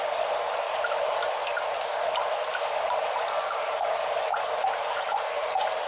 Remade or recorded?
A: recorded